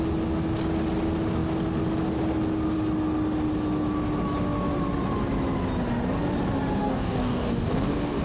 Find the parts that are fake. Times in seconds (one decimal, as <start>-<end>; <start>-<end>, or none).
6.8-8.2